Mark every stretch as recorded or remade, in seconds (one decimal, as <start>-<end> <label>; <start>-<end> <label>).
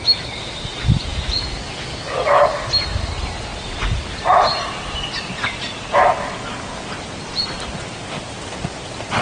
0.0-9.2 recorded